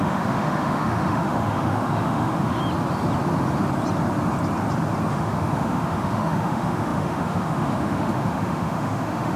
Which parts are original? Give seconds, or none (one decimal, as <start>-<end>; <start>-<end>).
2.6-5.1

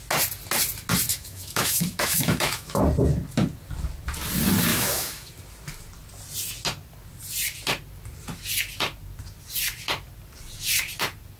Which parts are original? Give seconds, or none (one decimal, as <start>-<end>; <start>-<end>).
0.0-1.1; 2.8-4.7; 5.3-11.4

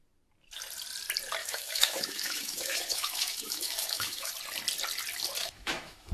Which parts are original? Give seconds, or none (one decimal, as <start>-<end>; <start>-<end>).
0.0-1.4; 4.3-5.4